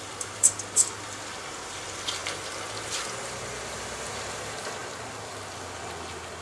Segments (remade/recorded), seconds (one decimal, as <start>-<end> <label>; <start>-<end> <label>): 0.0-6.4 recorded